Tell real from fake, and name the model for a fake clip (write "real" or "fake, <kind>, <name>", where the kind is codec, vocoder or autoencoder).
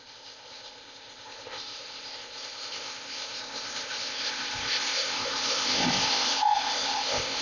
fake, codec, ZipCodec